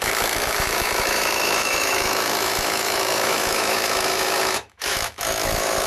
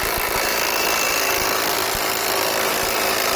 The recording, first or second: second